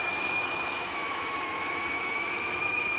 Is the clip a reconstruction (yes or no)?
yes